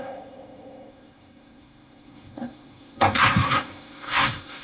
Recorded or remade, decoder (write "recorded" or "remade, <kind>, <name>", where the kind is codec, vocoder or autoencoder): remade, codec, SNAC